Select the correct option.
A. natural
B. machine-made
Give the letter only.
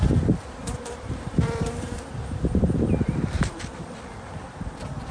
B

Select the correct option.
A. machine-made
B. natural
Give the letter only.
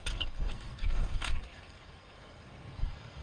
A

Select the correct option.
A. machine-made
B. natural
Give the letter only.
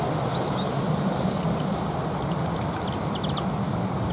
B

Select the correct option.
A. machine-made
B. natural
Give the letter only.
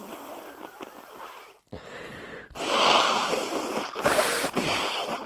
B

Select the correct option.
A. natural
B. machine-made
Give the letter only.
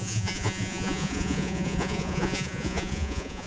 B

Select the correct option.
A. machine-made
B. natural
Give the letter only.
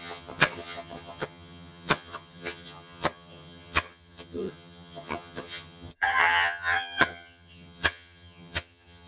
A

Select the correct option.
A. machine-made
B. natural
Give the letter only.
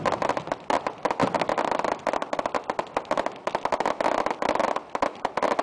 B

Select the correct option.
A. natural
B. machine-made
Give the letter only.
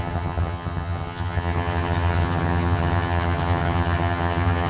B